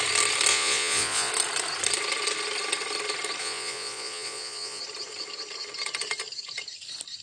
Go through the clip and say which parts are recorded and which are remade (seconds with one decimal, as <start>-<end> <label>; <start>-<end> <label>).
0.0-0.5 recorded; 0.5-1.3 remade; 1.3-3.4 recorded; 3.4-4.8 remade; 4.8-7.2 recorded